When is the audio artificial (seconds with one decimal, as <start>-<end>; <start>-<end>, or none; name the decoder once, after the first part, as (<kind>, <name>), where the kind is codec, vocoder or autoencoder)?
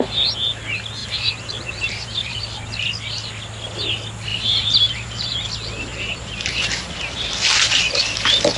1.0-2.4 (vocoder, BigVGAN v2); 4.3-5.4; 5.9-7.3